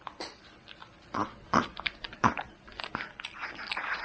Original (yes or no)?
yes